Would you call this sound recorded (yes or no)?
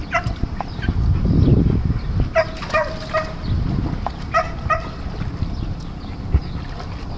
yes